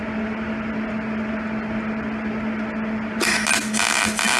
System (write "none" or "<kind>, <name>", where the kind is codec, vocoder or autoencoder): none